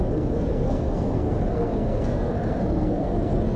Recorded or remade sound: remade